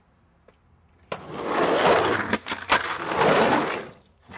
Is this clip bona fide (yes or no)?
yes